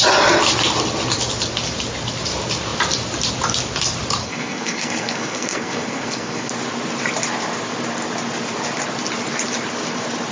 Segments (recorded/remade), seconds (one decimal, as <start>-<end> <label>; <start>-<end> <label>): 0.0-4.2 recorded; 4.2-6.5 remade; 6.5-10.3 recorded